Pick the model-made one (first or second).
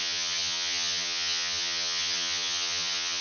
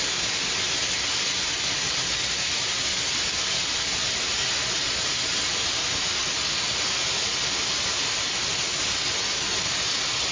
first